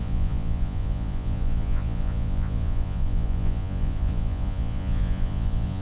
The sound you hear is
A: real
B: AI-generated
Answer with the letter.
B